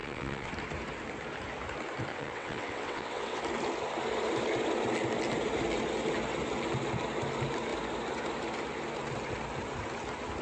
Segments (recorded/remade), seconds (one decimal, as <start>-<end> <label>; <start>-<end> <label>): 0.0-0.5 remade; 0.5-2.1 recorded; 2.1-3.4 remade; 3.4-10.4 recorded